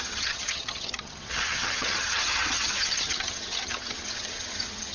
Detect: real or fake fake